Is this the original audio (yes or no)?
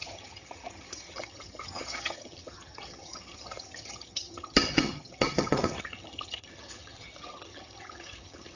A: no